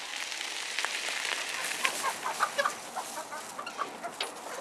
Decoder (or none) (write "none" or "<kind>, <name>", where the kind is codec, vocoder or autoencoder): none